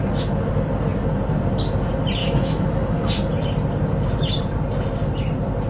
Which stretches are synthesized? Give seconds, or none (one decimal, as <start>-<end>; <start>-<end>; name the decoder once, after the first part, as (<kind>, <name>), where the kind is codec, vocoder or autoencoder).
2.2-3.0 (autoencoder, DAC-VAE)